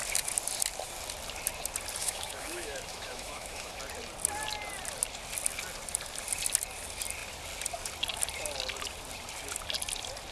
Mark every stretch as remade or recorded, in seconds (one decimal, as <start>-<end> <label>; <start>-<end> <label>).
0.0-2.0 recorded; 2.0-3.8 remade; 3.8-10.3 recorded